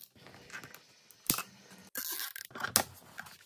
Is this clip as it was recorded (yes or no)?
yes